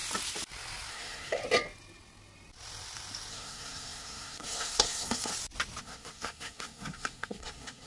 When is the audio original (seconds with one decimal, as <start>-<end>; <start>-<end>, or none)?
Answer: 0.0-0.9; 1.4-3.3; 5.3-5.8